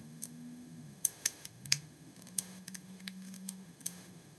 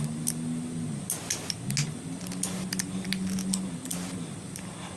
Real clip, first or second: second